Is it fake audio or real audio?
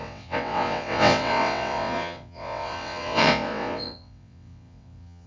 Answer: fake